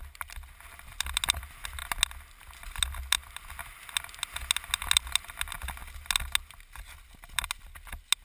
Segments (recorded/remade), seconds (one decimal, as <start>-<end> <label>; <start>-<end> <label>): 0.0-8.2 recorded

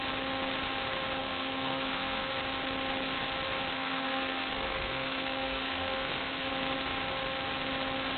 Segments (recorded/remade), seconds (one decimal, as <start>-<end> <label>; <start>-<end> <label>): 0.0-1.2 recorded; 1.2-2.3 remade; 2.3-3.7 recorded; 3.7-6.5 remade; 6.5-8.2 recorded

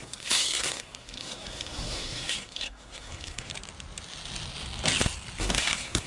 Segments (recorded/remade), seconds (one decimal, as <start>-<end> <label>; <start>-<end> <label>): 0.0-3.5 remade; 3.5-5.4 recorded; 5.4-6.1 remade

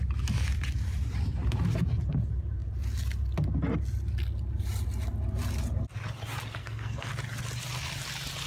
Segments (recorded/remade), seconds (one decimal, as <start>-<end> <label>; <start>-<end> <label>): 0.0-6.6 recorded; 6.6-7.1 remade; 7.1-8.5 recorded

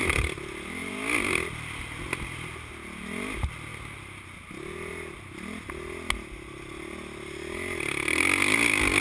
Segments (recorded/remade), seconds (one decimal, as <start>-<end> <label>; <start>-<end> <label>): 0.0-9.0 recorded

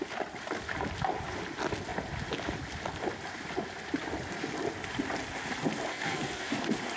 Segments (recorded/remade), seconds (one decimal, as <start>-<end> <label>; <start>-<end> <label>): 0.0-5.9 recorded; 5.9-6.5 remade; 6.5-7.0 recorded